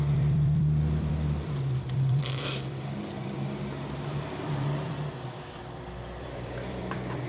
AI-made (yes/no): yes